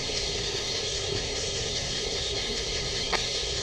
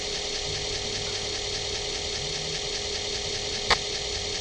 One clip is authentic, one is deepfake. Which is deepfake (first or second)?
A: first